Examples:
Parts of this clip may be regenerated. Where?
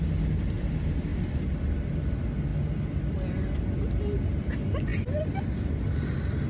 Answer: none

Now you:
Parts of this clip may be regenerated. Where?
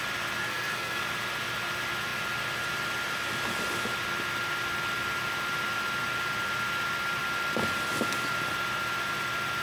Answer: 0.4-1.0 (codec, SNAC)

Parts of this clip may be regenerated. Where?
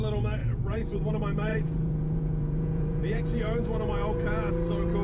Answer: 0.4-1.1 (vocoder, Vocos); 1.5-4.5